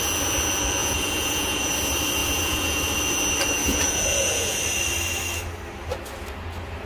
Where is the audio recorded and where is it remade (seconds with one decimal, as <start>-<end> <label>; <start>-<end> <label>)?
0.0-0.8 recorded; 0.8-1.7 remade; 1.7-2.2 recorded; 2.2-2.8 remade; 2.8-3.6 recorded; 3.6-4.6 remade; 4.6-6.9 recorded